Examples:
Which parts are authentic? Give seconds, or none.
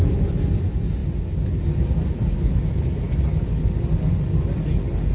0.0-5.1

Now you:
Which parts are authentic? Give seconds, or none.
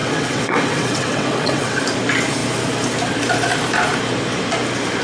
1.8-5.0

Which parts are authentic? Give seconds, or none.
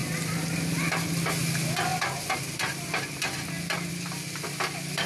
0.0-5.1